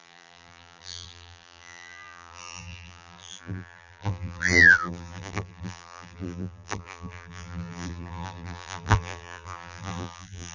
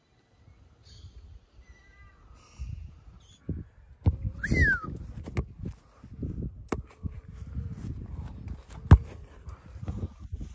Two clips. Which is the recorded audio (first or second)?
second